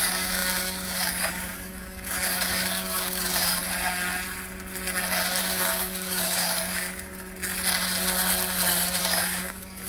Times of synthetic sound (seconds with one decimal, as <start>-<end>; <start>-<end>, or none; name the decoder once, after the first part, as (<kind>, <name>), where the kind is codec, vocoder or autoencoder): 0.0-3.6 (codec, DAC); 5.4-7.1; 9.0-9.9